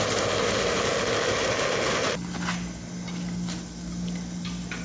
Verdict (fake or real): real